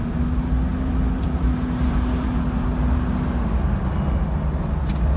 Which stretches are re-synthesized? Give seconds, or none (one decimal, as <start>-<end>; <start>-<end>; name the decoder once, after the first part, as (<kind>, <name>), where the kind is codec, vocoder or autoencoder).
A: 0.7-2.3 (vocoder, BigVGAN v2)